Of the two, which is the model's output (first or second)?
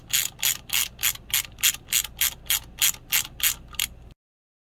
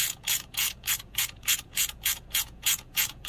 second